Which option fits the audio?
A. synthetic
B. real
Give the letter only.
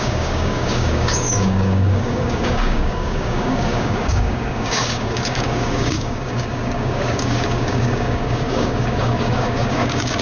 A